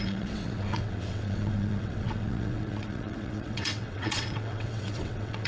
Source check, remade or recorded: remade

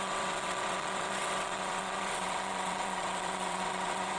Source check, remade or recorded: remade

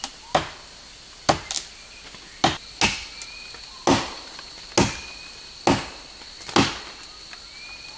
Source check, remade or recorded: recorded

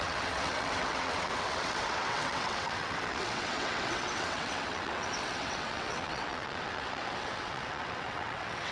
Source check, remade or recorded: remade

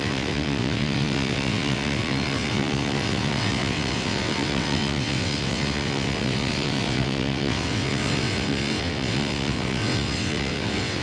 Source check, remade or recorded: remade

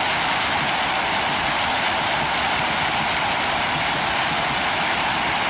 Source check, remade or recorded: recorded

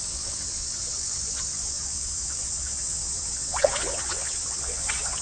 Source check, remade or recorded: remade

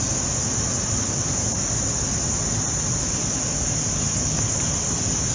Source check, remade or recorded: recorded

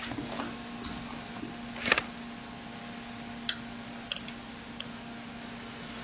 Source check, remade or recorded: recorded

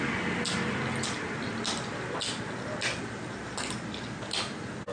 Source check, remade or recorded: recorded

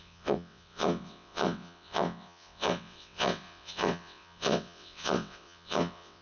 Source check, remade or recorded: remade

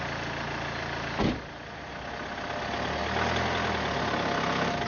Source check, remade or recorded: recorded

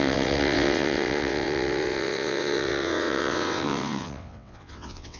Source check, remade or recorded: remade